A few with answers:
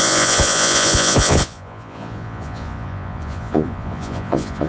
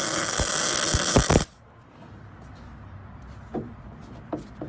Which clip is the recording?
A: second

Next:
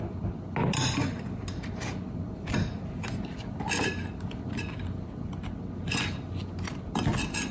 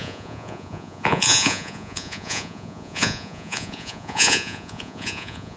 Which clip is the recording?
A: first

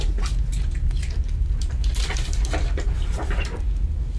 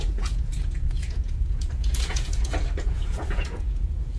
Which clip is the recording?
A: first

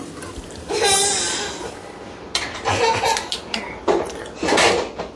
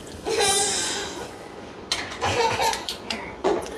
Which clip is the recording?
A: first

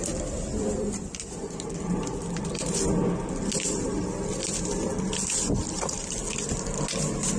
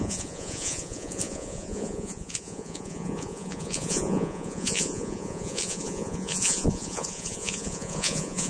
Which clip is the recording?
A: first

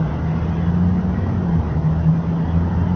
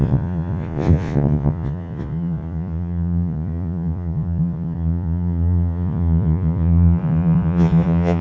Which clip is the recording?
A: first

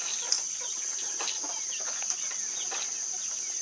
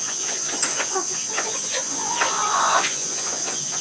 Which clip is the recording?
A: first